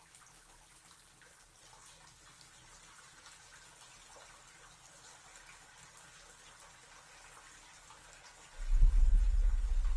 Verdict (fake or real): real